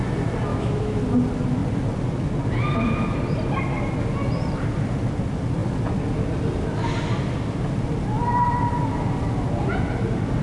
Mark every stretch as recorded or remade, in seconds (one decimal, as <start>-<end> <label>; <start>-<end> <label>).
0.0-0.5 recorded; 0.5-1.0 remade; 1.0-10.4 recorded